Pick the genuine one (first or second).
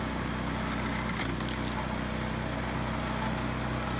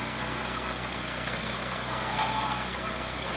first